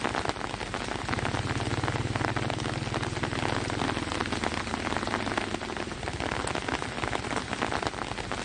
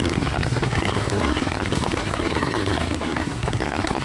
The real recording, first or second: first